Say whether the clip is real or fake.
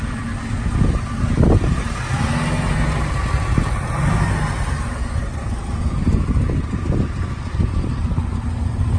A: real